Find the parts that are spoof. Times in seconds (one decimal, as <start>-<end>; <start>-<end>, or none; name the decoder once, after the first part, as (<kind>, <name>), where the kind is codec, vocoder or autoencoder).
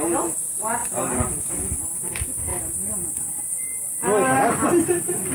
0.8-1.8 (vocoder, BigVGAN v2)